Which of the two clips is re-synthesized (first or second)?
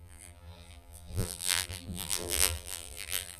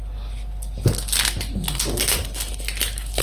first